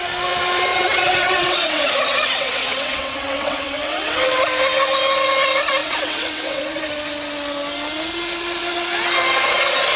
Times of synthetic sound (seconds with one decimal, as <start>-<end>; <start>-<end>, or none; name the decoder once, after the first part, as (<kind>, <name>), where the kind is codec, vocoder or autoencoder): 0.7-4.4 (vocoder, WaveNeXt); 5.8-6.6